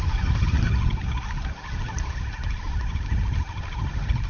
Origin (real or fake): real